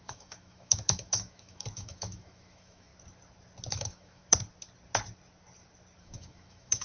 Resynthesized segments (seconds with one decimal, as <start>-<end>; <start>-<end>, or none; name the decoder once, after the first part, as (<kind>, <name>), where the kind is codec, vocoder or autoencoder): 0.0-2.9 (autoencoder, DAC-VAE); 3.7-4.2; 6.0-6.8